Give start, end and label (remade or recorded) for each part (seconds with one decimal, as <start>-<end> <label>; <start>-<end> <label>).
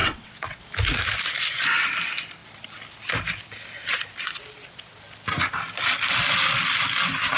0.0-0.6 remade; 0.6-7.4 recorded